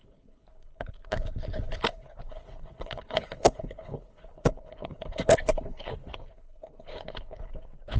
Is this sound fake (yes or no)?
yes